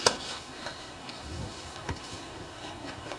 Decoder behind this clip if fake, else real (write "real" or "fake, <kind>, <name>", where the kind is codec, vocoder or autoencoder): fake, codec, SNAC